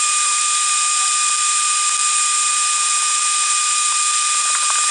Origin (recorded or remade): remade